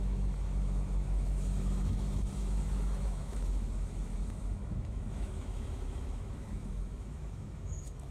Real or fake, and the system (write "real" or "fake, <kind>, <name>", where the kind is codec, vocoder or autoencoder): fake, autoencoder, DAC-VAE